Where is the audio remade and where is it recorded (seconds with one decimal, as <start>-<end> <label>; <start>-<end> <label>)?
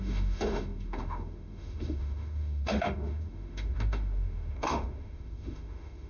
0.0-6.1 remade